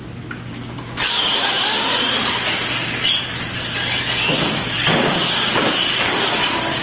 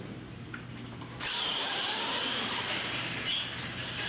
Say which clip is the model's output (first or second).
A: second